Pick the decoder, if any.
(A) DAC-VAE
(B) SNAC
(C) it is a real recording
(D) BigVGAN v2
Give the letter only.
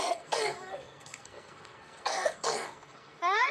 B